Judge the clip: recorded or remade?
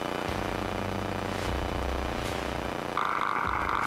recorded